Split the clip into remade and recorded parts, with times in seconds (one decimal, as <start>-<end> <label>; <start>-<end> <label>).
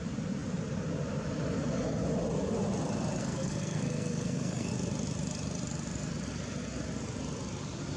0.0-3.2 recorded; 3.2-4.7 remade; 4.7-8.0 recorded